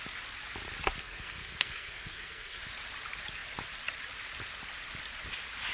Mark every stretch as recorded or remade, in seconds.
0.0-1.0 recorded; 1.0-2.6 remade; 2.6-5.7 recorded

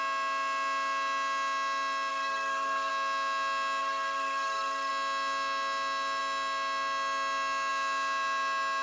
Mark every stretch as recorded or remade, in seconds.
0.0-2.1 recorded; 2.1-2.9 remade; 2.9-3.8 recorded; 3.8-4.9 remade; 4.9-8.8 recorded

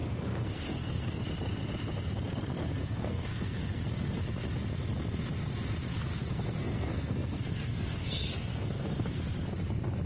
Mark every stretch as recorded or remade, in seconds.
0.0-1.2 remade; 1.2-2.8 recorded; 2.8-4.2 remade; 4.2-5.9 recorded; 5.9-9.2 remade; 9.2-10.1 recorded

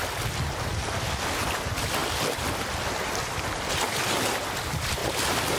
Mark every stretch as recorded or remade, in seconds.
0.0-5.6 recorded

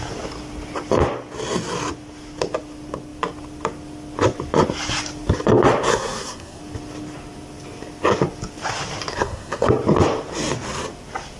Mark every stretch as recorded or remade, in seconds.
0.0-5.9 recorded; 5.9-6.6 remade; 6.6-9.1 recorded; 9.1-9.7 remade; 9.7-11.4 recorded

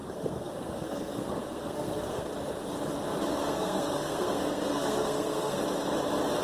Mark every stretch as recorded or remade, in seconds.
0.0-2.3 remade; 2.3-3.4 recorded; 3.4-5.6 remade; 5.6-6.4 recorded

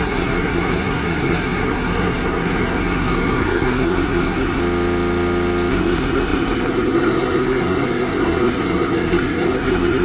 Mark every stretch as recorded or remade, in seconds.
0.0-4.6 remade; 4.6-5.7 recorded; 5.7-10.0 remade

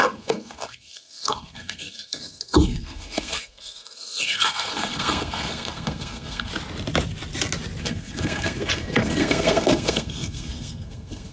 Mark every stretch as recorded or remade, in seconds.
0.0-6.5 remade; 6.5-7.8 recorded; 7.8-11.3 remade